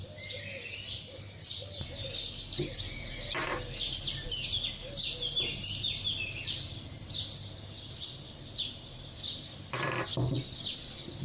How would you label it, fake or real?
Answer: real